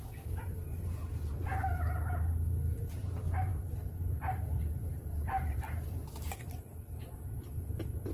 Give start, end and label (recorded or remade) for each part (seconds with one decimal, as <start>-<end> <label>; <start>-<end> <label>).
0.0-3.5 recorded; 3.5-6.9 remade; 6.9-8.1 recorded